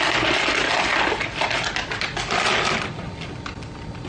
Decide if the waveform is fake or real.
real